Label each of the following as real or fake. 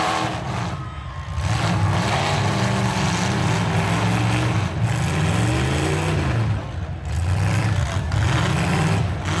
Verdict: real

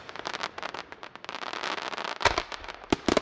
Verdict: real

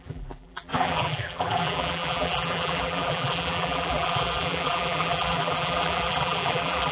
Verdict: fake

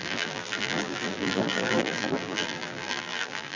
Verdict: fake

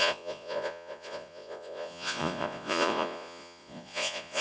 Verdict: fake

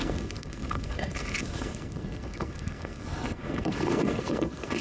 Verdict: fake